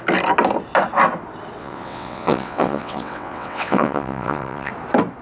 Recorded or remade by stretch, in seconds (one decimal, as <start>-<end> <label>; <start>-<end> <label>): 0.0-1.6 recorded; 1.6-4.7 remade; 4.7-5.2 recorded